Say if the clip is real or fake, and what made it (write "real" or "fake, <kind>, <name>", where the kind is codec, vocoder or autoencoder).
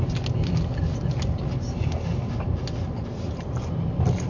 real